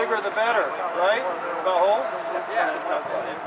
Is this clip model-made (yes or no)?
no